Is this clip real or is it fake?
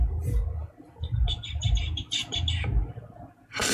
fake